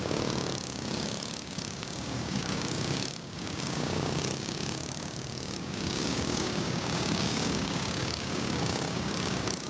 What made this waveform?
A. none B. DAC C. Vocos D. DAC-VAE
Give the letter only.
B